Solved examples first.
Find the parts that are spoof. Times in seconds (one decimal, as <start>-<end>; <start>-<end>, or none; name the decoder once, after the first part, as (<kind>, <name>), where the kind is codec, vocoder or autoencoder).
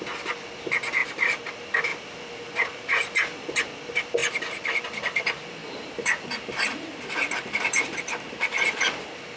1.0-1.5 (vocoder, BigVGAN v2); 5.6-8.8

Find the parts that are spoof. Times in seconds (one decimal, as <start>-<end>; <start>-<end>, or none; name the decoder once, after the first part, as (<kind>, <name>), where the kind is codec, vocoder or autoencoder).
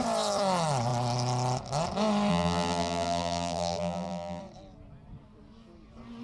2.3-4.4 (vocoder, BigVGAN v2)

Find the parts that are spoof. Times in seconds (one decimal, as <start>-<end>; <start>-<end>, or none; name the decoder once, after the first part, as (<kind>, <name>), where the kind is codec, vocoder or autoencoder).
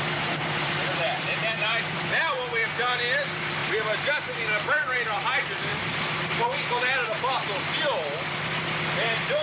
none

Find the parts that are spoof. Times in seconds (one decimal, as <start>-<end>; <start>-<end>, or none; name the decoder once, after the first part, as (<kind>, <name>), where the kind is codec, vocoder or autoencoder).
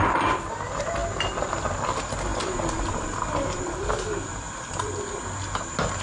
1.0-1.7 (vocoder, BigVGAN v2); 4.3-4.9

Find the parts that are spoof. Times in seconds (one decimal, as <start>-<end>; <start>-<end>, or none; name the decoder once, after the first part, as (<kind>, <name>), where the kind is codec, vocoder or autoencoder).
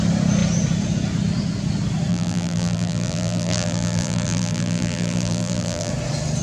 2.1-5.9 (vocoder, BigVGAN v2)